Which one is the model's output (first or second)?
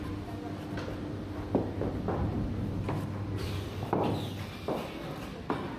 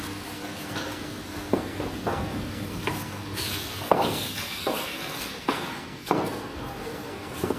second